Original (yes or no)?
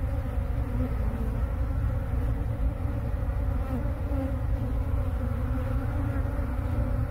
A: yes